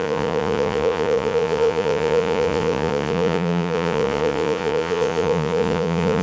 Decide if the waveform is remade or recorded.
remade